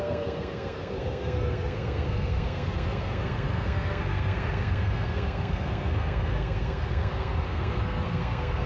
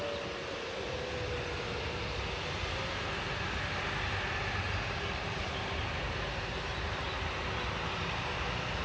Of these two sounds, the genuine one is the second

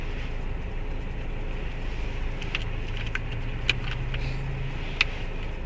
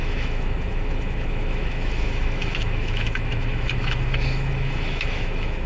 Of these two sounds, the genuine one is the first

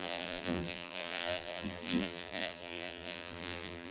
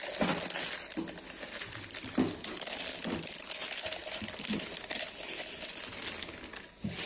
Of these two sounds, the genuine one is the second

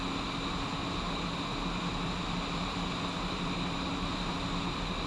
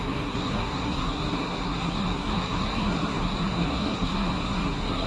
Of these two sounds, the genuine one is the first